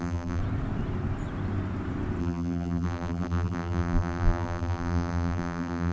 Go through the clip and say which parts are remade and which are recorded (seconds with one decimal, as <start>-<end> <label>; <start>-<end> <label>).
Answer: 0.0-0.4 remade; 0.4-2.2 recorded; 2.2-5.9 remade